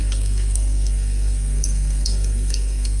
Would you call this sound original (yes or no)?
no